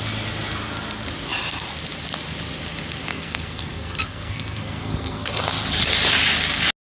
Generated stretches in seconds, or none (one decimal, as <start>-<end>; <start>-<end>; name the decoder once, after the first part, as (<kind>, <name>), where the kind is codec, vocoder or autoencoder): 3.1-5.3 (codec, SNAC)